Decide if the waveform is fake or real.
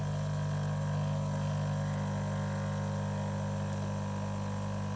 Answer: real